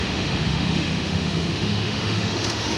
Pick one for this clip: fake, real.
fake